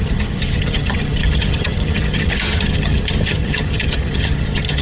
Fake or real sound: fake